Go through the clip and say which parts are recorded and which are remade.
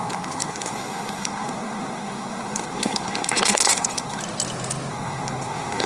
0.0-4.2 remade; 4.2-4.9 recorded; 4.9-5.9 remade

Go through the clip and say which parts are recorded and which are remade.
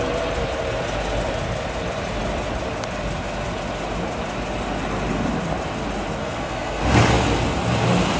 0.0-6.2 recorded; 6.2-7.0 remade; 7.0-8.2 recorded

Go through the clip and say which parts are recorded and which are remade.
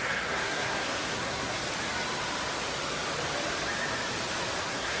0.0-1.6 remade; 1.6-4.6 recorded; 4.6-5.0 remade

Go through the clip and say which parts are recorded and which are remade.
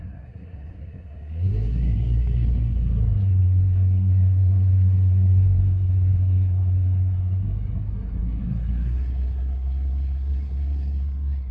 0.0-11.5 remade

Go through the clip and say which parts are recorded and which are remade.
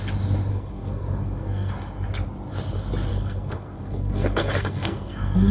0.0-0.5 recorded; 0.5-1.7 remade; 1.7-3.1 recorded; 3.1-5.5 remade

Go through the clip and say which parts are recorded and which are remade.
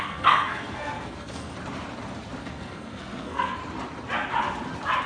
0.0-1.5 remade; 1.5-2.4 recorded; 2.4-3.6 remade; 3.6-5.1 recorded